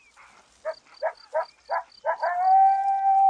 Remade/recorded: recorded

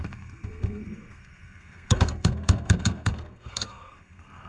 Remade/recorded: remade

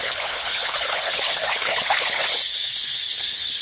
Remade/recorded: remade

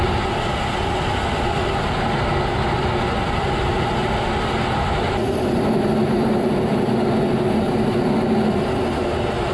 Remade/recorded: recorded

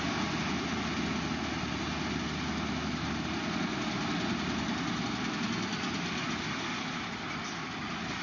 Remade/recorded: recorded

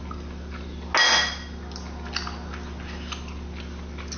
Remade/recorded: recorded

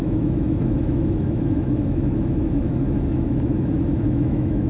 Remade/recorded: remade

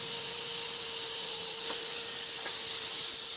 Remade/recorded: recorded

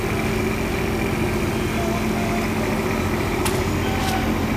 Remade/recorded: recorded